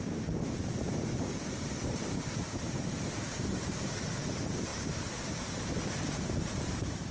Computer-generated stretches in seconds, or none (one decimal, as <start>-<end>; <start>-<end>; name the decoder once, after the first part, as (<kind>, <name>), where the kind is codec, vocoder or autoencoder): 0.0-7.1 (vocoder, BigVGAN v2)